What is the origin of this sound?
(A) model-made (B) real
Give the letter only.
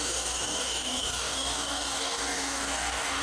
A